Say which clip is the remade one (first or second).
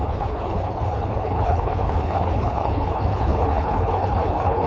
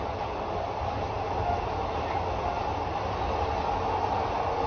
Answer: first